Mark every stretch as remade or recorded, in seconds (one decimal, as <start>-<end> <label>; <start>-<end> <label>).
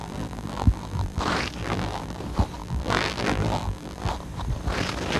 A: 0.0-1.2 remade; 1.2-1.6 recorded; 1.6-2.2 remade; 2.2-2.6 recorded; 2.6-4.1 remade; 4.1-5.2 recorded